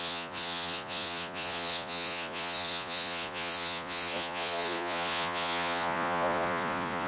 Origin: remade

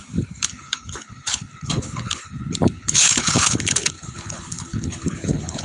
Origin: remade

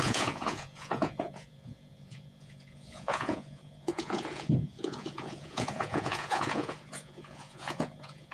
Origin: remade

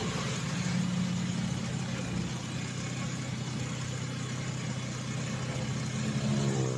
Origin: recorded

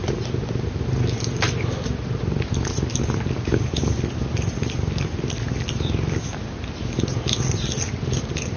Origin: recorded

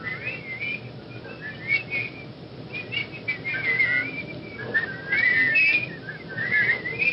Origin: recorded